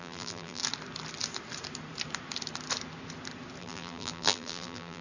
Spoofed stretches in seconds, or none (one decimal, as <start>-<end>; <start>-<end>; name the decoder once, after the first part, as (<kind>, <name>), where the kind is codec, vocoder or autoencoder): 0.0-0.6 (vocoder, BigVGAN v2); 3.6-5.0